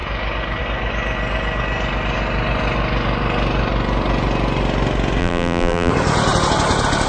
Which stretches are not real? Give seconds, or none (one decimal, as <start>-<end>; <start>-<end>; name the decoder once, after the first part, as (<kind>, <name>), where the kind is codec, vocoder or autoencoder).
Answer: 5.2-5.9 (vocoder, BigVGAN v2)